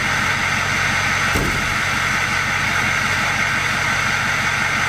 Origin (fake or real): real